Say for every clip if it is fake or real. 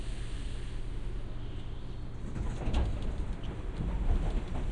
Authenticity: real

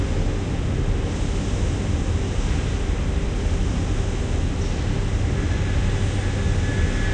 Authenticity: real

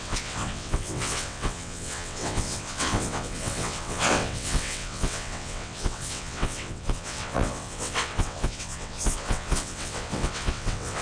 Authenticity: fake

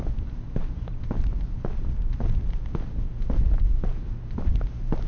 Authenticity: real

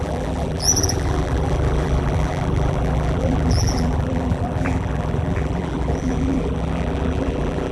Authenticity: fake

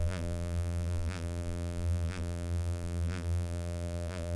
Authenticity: fake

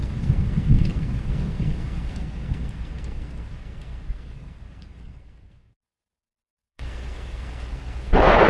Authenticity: fake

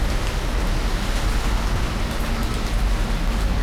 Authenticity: real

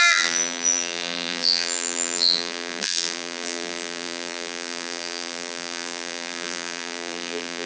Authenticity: fake